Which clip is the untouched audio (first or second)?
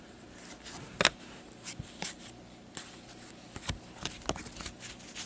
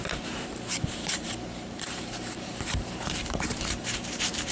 first